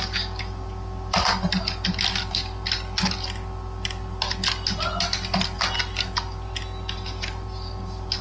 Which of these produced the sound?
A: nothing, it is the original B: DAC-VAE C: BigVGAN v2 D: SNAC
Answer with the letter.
A